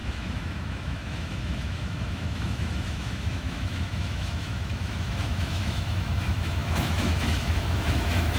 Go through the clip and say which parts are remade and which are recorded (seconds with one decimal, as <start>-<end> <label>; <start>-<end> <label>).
0.0-8.4 remade